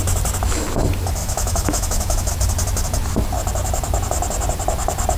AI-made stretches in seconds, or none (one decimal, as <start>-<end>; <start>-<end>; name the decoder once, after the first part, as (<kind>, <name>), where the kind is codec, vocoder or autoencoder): 1.2-2.3 (autoencoder, DAC-VAE)